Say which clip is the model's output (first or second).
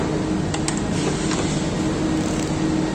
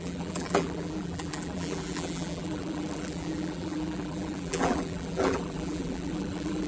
second